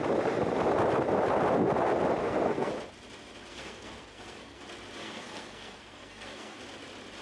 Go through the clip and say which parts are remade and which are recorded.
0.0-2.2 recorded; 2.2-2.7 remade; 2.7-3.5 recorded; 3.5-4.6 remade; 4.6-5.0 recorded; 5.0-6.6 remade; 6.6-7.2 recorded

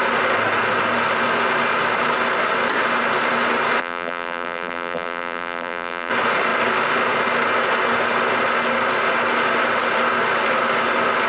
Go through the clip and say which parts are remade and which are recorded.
0.0-3.8 recorded; 3.8-6.1 remade; 6.1-11.3 recorded